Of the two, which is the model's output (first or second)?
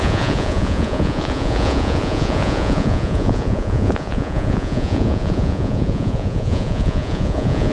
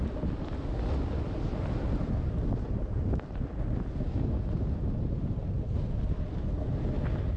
first